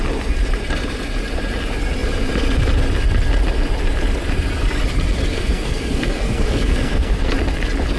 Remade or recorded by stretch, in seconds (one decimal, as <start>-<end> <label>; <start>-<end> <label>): 0.0-5.3 recorded; 5.3-7.3 remade; 7.3-8.0 recorded